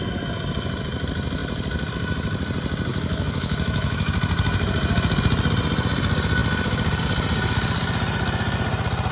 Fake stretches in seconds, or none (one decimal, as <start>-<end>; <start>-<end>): 2.9-4.1